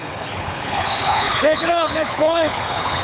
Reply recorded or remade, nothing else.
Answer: remade